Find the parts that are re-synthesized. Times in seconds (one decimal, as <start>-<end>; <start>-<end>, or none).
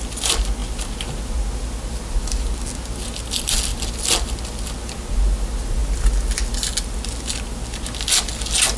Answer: none